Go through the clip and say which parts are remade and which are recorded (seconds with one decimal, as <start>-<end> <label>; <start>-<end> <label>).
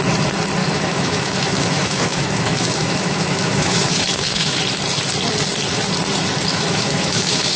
0.0-0.6 recorded; 0.6-4.6 remade; 4.6-6.5 recorded; 6.5-7.6 remade